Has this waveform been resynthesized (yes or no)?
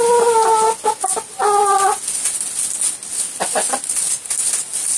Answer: no